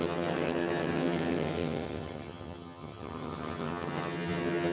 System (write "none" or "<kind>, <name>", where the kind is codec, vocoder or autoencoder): vocoder, HiFi-GAN